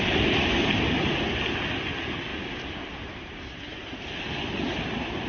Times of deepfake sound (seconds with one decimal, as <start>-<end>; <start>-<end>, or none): 2.3-4.4

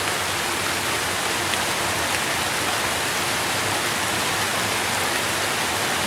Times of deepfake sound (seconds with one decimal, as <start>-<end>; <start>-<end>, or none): none

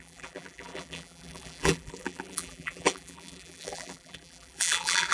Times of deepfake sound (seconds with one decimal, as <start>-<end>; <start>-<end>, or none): 0.0-5.1

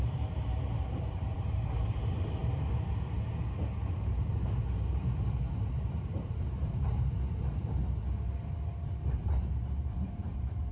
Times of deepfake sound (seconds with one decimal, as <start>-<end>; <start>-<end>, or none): 0.0-2.4; 5.7-7.8; 8.8-10.7

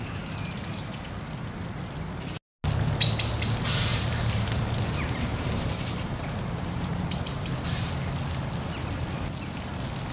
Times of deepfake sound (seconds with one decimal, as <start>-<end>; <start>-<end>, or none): 3.9-7.9

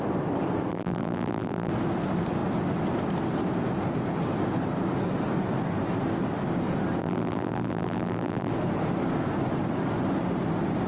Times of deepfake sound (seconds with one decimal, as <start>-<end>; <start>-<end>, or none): 0.7-1.7; 7.0-8.5

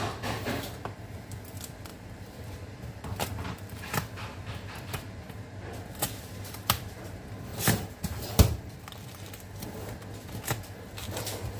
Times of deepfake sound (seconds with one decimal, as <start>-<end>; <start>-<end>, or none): 1.9-7.1; 7.5-9.3